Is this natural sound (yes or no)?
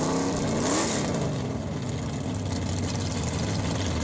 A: yes